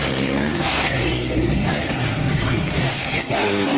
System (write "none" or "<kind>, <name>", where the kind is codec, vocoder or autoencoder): codec, SNAC